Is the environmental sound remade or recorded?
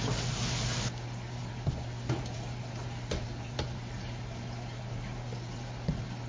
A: recorded